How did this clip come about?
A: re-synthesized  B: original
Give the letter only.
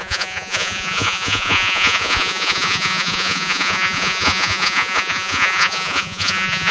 A